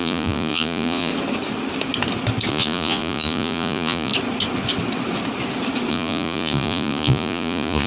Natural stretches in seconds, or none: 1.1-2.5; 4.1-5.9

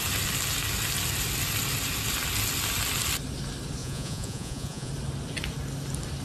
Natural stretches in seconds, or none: 0.0-3.8; 4.9-6.2

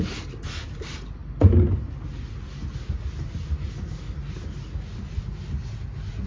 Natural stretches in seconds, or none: 0.0-6.3

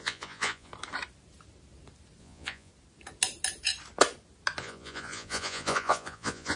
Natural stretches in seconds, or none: 0.7-2.2; 2.7-4.6